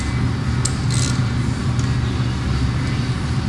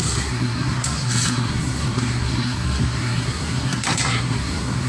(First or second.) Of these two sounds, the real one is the first